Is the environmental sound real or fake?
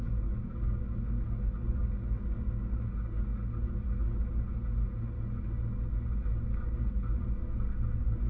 real